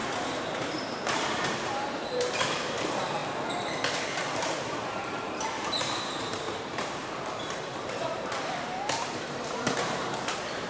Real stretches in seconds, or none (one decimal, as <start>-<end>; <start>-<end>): 3.2-4.4

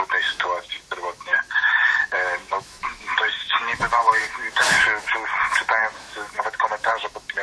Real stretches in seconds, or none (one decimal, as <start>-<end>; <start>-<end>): 5.1-6.0

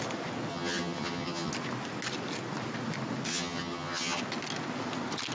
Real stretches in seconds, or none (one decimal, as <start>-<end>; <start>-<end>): 0.0-0.5; 1.5-3.3; 4.2-5.3

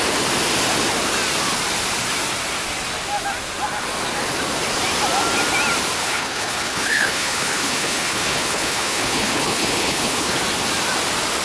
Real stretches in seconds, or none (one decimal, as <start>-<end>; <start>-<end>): 0.0-6.0; 10.4-11.4

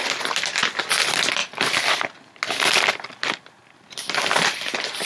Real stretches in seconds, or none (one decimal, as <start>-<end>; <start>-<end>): 0.0-5.1